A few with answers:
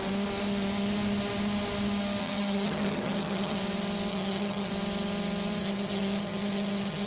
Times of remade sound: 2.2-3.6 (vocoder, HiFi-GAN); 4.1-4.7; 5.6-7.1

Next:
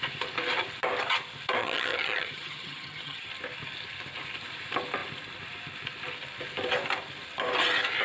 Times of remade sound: 1.6-3.3 (vocoder, HiFi-GAN)

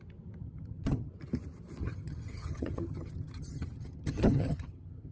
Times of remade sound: 0.4-1.1 (vocoder, HiFi-GAN); 1.8-5.1